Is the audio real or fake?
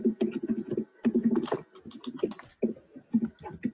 fake